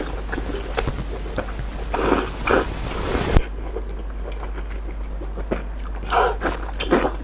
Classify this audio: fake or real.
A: real